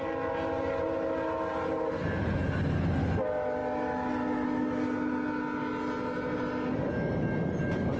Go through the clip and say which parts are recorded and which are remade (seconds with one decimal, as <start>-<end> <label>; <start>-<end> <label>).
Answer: 0.0-8.0 recorded